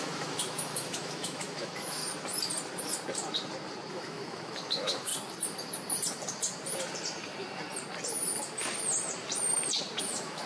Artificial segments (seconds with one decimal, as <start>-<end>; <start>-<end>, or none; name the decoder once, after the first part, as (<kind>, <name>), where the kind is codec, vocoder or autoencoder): 0.0-2.0 (autoencoder, DAC-VAE); 3.9-5.1; 10.0-10.5